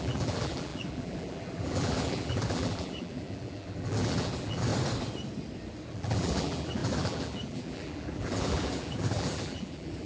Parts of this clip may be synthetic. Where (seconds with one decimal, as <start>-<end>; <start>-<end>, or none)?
0.0-4.7; 5.9-10.1